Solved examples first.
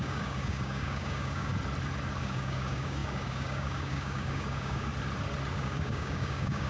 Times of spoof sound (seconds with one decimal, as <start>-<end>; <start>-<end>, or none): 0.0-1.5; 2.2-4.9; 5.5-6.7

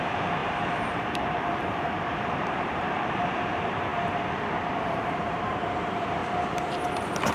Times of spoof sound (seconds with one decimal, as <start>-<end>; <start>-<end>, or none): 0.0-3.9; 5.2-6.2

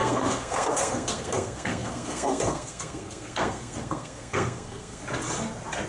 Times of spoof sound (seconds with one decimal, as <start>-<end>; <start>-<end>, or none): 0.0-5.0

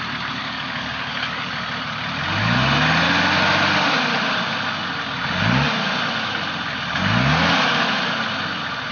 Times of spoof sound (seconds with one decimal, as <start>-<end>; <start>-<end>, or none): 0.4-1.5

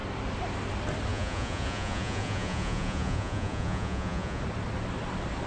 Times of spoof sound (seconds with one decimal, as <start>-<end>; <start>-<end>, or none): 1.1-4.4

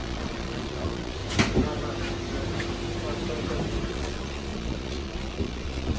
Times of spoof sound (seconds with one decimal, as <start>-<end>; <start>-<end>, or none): 0.0-1.2; 3.9-6.0

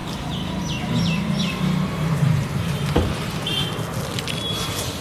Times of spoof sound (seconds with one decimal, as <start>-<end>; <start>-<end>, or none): 0.0-3.5; 4.4-5.0